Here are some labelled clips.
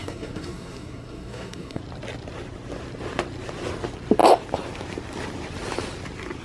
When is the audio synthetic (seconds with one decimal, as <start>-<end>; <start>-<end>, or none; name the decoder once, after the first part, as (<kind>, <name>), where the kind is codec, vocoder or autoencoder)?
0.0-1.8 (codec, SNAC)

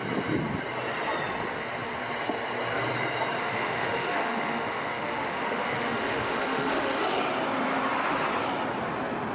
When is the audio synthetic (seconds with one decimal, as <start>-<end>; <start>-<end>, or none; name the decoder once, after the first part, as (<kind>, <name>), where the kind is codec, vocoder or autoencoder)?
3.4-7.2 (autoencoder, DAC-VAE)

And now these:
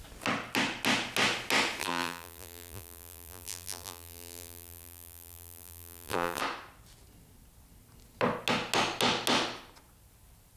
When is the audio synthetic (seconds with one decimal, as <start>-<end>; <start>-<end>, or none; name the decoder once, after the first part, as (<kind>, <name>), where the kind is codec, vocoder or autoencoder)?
1.8-6.4 (vocoder, BigVGAN v2)

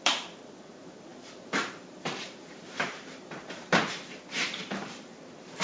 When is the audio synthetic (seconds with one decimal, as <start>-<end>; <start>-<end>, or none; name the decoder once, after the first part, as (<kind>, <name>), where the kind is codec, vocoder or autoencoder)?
0.0-5.6 (vocoder, BigVGAN v2)

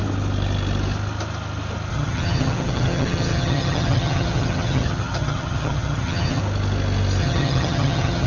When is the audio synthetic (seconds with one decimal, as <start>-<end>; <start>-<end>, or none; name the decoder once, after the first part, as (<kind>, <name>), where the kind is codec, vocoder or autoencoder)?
1.9-6.4 (vocoder, HiFi-GAN); 7.2-8.3

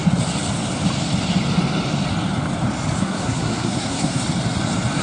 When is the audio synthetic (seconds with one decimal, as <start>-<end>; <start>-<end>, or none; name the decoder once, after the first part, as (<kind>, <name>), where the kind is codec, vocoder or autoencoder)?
3.0-4.2 (codec, SNAC)

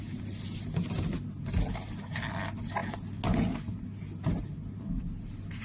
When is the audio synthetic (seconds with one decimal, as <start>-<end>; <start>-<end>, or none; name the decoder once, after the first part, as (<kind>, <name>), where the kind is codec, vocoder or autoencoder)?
none